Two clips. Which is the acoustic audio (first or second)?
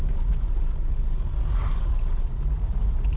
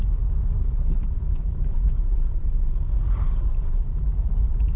first